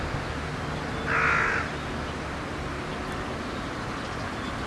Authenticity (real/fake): real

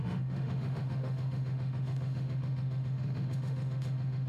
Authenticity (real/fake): fake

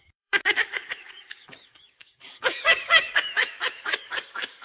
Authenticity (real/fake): fake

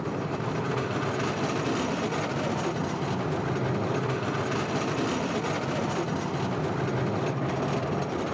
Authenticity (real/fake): real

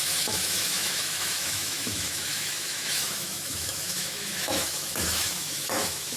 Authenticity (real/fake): fake